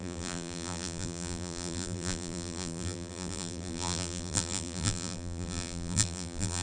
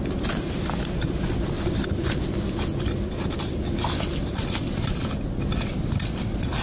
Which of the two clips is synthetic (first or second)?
first